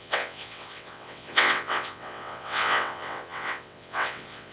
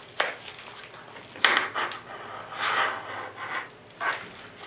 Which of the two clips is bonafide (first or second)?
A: second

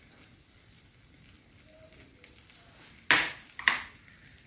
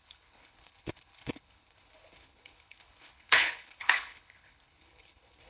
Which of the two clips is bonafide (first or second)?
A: first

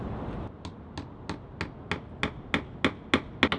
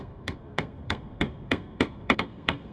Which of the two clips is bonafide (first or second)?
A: first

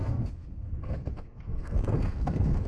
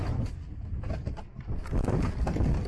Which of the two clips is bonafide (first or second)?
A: second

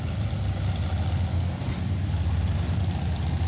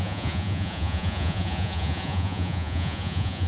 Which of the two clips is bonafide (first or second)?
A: first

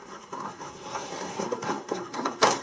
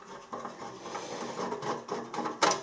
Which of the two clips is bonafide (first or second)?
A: second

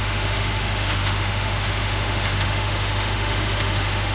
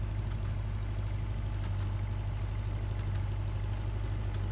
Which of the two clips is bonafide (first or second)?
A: second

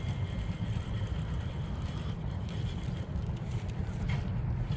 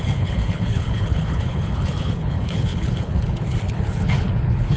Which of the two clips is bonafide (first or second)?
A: first